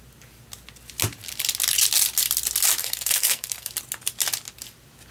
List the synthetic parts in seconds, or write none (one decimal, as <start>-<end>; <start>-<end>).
2.8-3.7